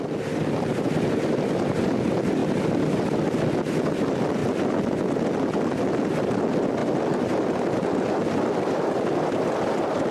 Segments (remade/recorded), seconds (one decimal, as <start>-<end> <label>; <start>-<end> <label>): 0.0-10.1 recorded